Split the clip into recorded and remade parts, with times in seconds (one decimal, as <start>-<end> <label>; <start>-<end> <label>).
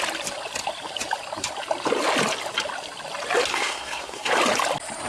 0.0-3.5 recorded; 3.5-4.3 remade; 4.3-5.1 recorded